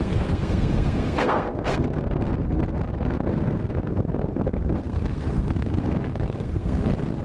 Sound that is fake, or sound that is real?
fake